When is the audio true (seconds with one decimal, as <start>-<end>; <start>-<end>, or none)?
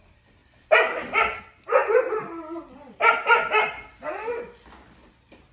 0.0-5.5